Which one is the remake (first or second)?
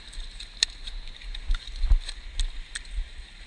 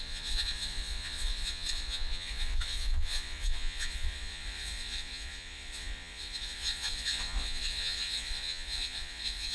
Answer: second